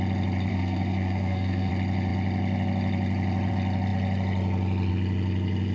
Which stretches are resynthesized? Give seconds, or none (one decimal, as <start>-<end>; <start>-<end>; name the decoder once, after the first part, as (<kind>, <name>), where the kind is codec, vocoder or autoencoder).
0.5-1.7 (codec, SNAC)